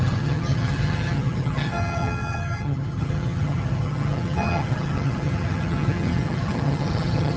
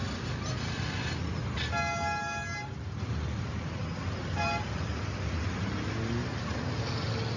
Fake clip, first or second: first